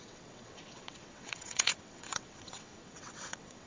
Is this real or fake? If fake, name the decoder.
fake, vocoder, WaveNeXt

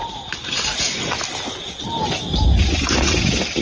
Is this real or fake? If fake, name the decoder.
real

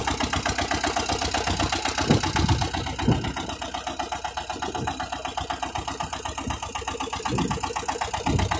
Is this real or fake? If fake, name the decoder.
real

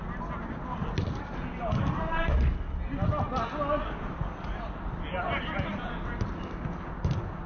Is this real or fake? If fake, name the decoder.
real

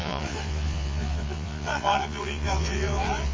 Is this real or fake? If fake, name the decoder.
fake, vocoder, WaveNeXt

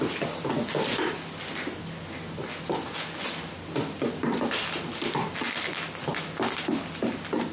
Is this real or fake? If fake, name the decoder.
real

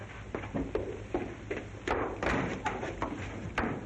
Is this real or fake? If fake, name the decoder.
real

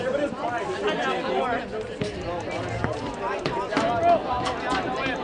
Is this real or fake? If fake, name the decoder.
real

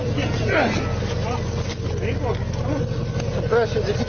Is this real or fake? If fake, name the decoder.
real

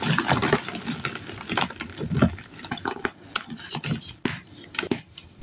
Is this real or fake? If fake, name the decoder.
real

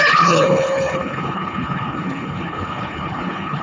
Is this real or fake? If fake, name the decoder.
fake, codec, HILCodec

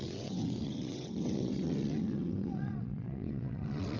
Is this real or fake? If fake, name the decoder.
fake, vocoder, WaveNeXt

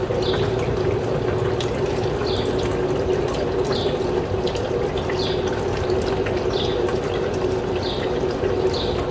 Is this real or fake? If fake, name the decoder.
real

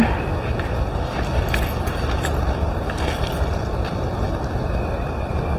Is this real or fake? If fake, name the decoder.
real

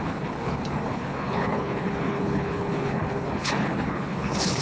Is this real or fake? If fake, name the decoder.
fake, codec, HILCodec